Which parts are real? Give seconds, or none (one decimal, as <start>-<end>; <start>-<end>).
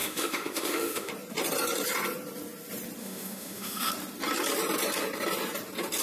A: 1.1-3.0; 3.9-6.0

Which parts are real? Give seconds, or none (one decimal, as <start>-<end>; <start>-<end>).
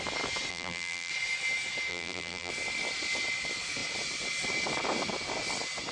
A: 0.0-0.5; 1.1-1.9; 2.5-5.9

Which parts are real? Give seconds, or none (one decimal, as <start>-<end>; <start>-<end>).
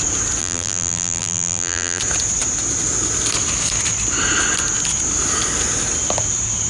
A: 0.0-0.4; 2.0-6.7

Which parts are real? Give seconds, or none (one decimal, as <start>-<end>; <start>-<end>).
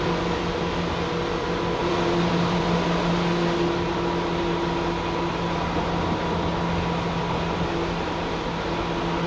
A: 0.0-1.8; 2.6-9.3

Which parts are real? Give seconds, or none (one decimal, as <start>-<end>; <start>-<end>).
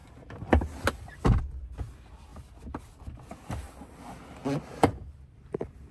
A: 0.0-5.9